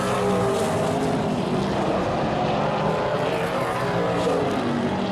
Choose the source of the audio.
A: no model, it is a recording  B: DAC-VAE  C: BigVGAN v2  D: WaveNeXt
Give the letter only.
A